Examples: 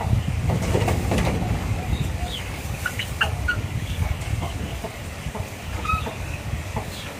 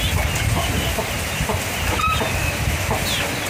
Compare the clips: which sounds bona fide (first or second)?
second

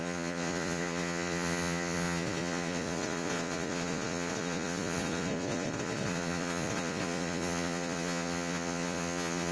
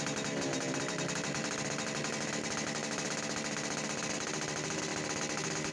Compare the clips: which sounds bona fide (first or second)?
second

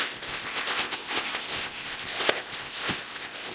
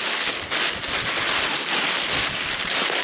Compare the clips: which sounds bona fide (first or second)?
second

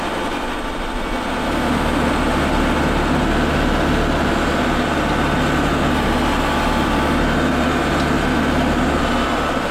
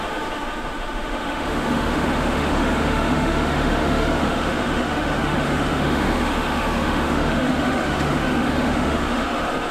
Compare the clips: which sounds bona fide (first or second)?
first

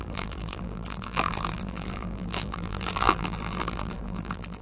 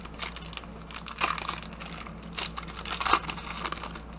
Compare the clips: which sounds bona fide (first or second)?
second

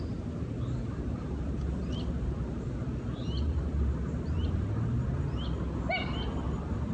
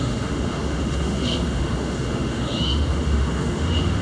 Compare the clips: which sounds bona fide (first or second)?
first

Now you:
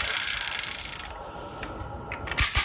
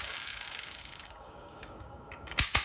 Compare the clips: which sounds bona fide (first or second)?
first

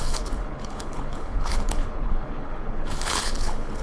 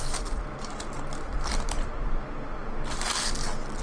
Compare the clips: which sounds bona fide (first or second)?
second